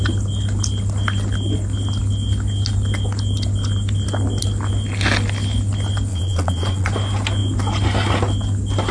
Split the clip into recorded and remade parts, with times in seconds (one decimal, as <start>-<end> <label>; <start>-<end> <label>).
0.0-6.1 recorded; 6.1-6.9 remade; 6.9-8.9 recorded